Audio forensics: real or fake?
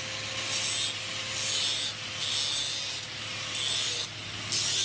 real